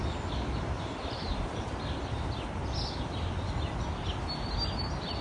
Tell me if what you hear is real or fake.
real